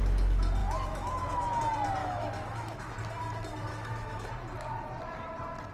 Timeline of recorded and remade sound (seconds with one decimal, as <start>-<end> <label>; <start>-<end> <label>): 0.0-0.6 recorded; 0.6-1.6 remade; 1.6-2.0 recorded; 2.0-2.9 remade; 2.9-3.7 recorded; 3.7-4.3 remade; 4.3-5.7 recorded